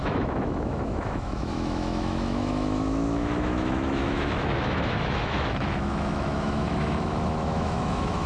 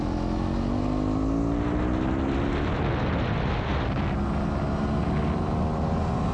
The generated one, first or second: first